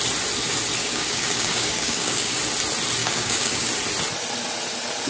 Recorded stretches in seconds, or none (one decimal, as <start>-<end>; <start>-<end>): 0.0-0.8; 2.4-3.0; 3.7-5.1